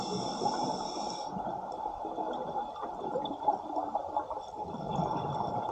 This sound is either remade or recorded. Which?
recorded